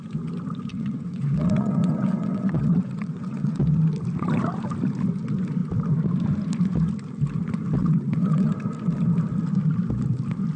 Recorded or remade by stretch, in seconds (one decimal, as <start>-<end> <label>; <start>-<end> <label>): 0.0-0.7 recorded; 0.7-3.6 remade; 3.6-7.8 recorded; 7.8-8.5 remade; 8.5-10.6 recorded